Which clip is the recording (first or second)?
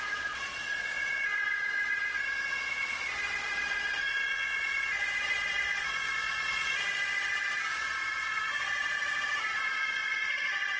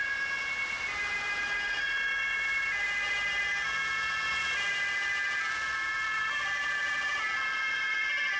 second